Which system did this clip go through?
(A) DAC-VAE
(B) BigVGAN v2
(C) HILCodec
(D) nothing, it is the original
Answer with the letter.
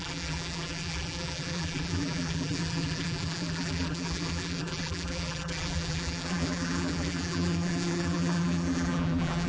B